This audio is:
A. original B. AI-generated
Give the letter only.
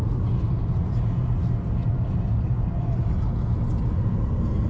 A